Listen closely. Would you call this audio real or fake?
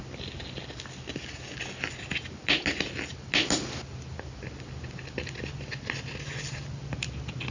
real